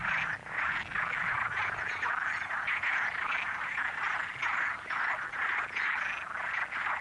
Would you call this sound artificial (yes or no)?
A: no